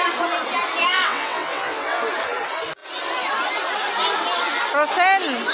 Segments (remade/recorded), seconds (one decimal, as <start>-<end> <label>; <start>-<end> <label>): 0.0-0.9 recorded; 0.9-2.0 remade; 2.0-5.5 recorded